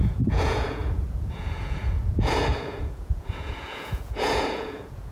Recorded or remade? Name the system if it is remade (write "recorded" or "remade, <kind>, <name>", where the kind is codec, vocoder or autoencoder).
remade, vocoder, Vocos